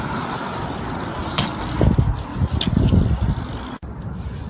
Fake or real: real